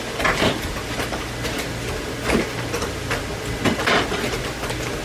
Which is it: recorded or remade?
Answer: recorded